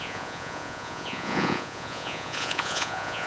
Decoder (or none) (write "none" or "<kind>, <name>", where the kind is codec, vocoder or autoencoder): vocoder, Vocos